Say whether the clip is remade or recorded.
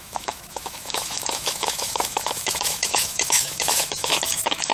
remade